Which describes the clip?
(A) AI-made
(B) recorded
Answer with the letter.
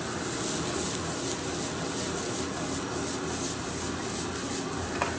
B